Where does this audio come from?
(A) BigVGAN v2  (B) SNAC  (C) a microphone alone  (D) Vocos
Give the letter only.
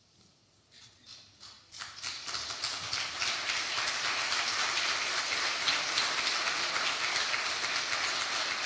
C